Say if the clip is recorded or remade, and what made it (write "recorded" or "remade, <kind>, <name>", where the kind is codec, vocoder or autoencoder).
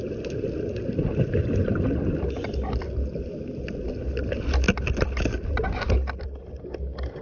recorded